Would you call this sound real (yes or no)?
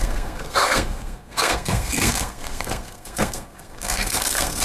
no